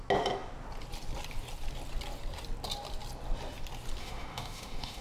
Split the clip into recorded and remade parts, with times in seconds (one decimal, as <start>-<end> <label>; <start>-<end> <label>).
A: 0.0-4.0 recorded; 4.0-5.0 remade